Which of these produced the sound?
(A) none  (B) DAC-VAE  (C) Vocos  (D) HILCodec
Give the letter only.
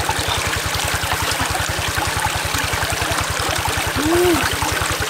A